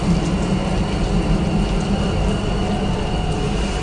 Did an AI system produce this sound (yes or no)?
no